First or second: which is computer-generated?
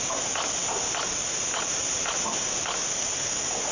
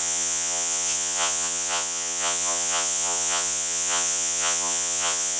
second